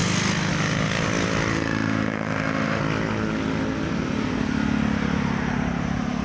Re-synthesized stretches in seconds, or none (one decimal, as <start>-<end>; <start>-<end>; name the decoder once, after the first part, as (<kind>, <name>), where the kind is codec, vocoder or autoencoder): 1.5-2.8 (autoencoder, DAC-VAE)